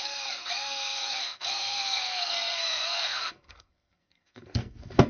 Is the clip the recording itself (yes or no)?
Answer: no